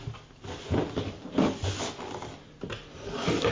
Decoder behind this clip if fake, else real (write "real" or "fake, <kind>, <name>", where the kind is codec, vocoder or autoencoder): real